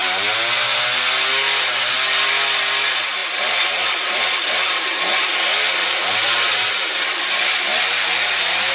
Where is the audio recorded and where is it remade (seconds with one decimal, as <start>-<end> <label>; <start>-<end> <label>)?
0.0-8.7 recorded